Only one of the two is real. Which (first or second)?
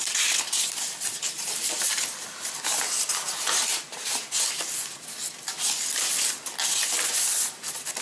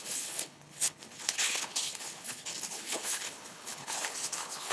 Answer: first